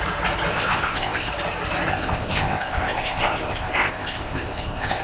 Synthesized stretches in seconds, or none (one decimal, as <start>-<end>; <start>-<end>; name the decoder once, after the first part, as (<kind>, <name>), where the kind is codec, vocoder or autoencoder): 0.5-1.3 (codec, ZipCodec); 1.9-5.0